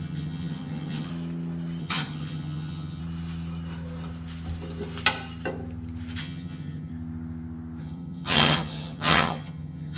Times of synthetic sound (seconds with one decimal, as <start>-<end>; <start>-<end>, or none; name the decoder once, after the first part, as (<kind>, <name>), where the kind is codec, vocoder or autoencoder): 0.0-1.1 (vocoder, HiFi-GAN); 1.8-3.0; 6.2-6.9; 7.8-10.0